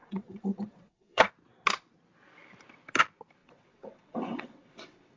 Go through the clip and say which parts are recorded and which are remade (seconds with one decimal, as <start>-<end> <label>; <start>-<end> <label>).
0.0-1.3 remade; 1.3-3.4 recorded; 3.4-5.2 remade